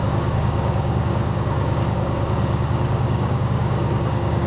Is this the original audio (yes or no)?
no